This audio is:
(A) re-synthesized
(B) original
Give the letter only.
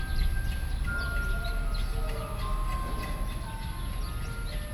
B